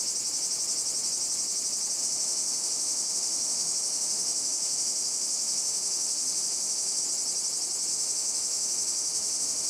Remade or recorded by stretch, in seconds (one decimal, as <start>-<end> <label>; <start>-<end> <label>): 0.0-2.0 recorded; 2.0-7.0 remade; 7.0-7.9 recorded; 7.9-9.7 remade